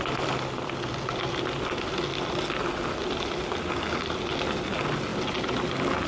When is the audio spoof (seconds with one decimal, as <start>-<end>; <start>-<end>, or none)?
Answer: none